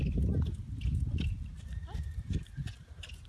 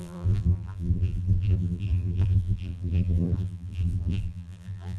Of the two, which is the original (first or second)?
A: first